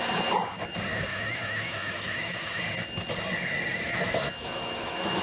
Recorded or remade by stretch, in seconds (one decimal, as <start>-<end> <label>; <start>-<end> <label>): 0.0-0.9 recorded; 0.9-2.6 remade; 2.6-3.7 recorded; 3.7-5.2 remade